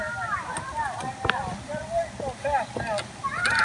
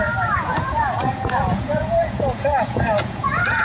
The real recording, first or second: first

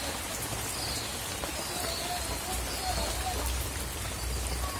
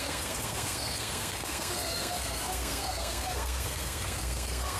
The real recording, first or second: first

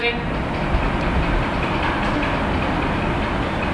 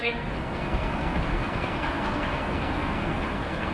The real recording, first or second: first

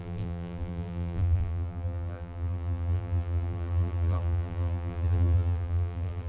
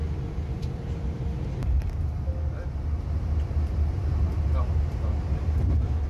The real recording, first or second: second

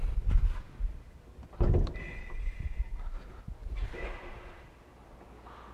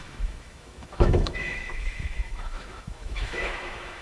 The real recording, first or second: first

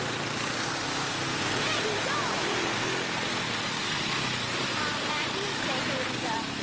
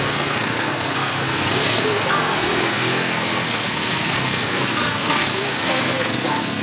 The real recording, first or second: first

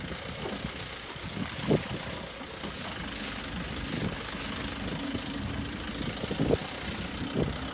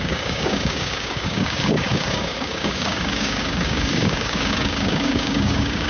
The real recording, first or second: first